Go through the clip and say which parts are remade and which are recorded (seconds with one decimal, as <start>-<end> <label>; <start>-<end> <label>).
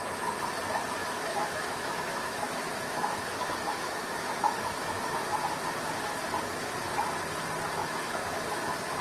0.0-1.0 recorded; 1.0-5.2 remade; 5.2-7.8 recorded; 7.8-8.3 remade; 8.3-9.0 recorded